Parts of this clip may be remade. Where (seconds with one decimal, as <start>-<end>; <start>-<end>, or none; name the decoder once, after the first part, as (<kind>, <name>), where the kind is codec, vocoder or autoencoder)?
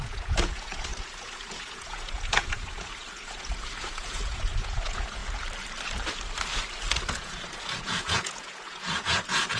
0.0-5.2 (vocoder, Vocos); 7.1-9.6